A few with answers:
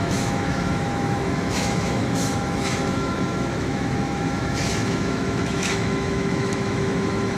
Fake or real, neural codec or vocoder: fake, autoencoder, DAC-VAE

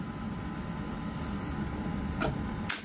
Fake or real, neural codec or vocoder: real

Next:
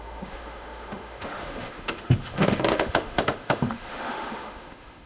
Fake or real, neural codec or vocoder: fake, autoencoder, DAC-VAE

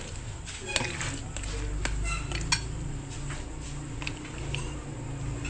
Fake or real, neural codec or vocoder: real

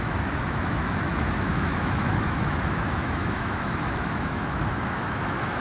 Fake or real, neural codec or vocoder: fake, autoencoder, DAC-VAE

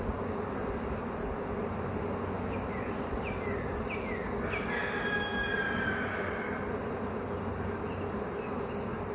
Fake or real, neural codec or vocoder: real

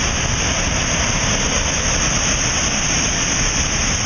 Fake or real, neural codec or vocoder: real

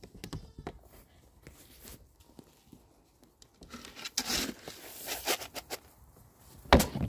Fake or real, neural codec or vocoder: real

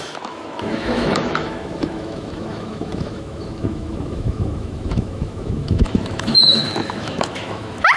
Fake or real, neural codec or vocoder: fake, autoencoder, DAC-VAE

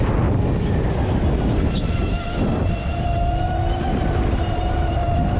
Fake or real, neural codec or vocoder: real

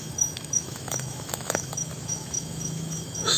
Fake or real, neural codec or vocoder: fake, autoencoder, DAC-VAE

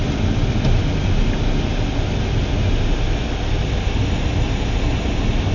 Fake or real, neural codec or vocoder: real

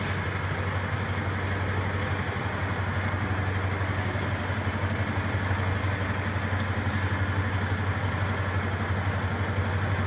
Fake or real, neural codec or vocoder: real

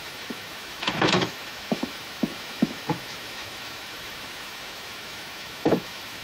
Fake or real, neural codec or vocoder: fake, autoencoder, DAC-VAE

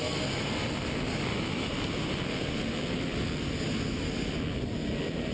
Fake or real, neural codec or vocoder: real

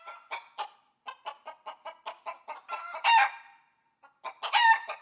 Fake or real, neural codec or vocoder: real